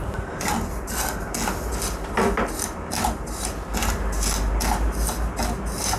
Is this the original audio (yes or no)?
yes